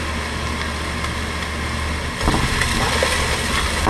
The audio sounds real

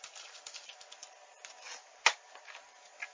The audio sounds real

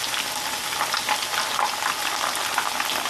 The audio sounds real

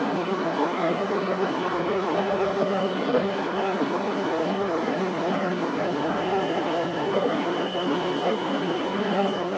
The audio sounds fake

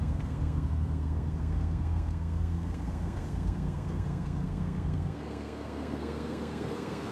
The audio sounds fake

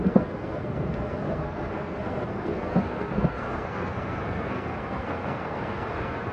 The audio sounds fake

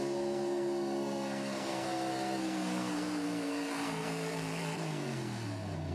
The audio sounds fake